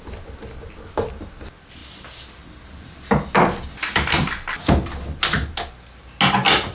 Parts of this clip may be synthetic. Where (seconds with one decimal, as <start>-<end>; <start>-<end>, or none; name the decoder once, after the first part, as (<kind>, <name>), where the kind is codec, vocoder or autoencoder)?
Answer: none